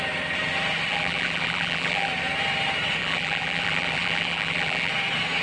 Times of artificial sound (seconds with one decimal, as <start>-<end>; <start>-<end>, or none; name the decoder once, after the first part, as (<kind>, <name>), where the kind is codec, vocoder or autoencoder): 0.9-2.1 (vocoder, BigVGAN v2); 3.0-4.9